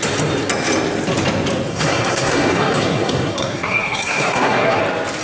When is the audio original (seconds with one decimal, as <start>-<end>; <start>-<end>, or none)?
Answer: 0.0-1.7; 4.8-5.2

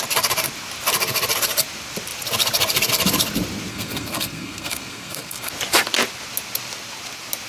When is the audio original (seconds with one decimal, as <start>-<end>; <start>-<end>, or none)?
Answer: 0.0-3.7; 5.5-7.5

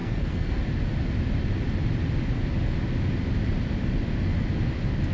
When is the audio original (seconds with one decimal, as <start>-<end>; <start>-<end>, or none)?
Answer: 0.6-5.1

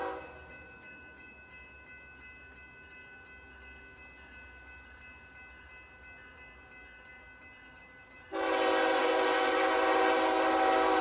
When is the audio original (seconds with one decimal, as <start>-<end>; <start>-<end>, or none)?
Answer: 0.0-11.0

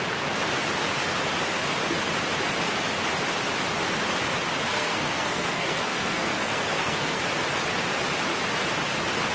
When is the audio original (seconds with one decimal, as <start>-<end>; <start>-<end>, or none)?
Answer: 0.0-4.7; 7.2-9.3

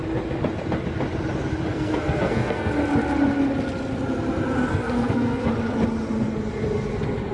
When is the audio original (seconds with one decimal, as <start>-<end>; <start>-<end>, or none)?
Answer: 0.0-1.7; 2.7-4.7; 5.5-7.3